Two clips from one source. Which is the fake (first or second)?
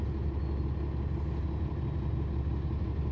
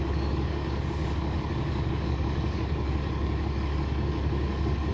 second